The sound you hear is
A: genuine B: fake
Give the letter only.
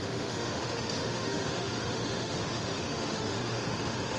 B